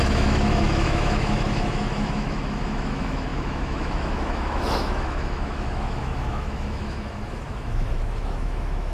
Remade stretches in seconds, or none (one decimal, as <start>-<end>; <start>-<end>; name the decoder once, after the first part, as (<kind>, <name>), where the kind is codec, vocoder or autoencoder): 0.0-8.9 (autoencoder, DAC-VAE)